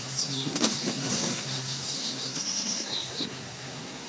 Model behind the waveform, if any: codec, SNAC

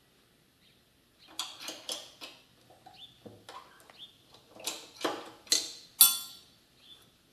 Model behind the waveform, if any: none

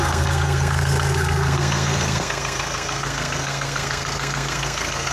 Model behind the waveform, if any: codec, SNAC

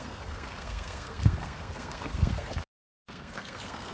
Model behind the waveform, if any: codec, SNAC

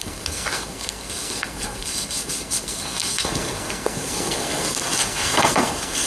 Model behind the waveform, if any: codec, SNAC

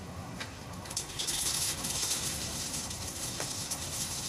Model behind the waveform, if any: codec, SNAC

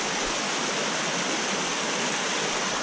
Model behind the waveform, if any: none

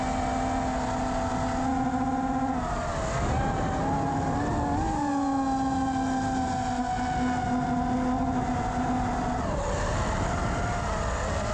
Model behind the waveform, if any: none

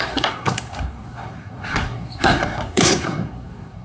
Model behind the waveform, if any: codec, SNAC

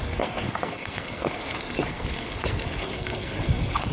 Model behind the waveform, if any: codec, SNAC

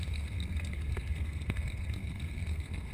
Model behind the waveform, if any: codec, SNAC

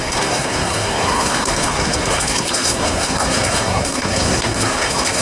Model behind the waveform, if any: codec, SNAC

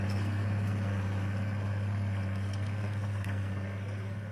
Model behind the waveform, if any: codec, SNAC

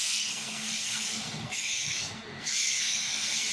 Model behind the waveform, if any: codec, SNAC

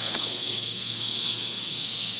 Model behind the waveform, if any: codec, SNAC